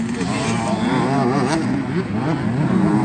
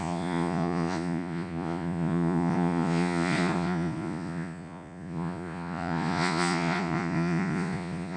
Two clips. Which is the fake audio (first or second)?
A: second